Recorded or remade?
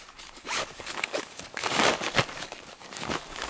remade